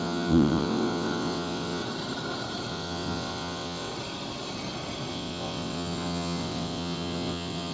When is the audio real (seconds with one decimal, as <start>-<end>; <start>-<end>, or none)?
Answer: 1.8-2.7; 3.9-5.1